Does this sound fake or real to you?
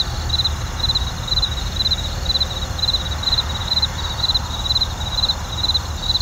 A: real